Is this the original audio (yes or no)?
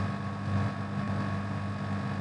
yes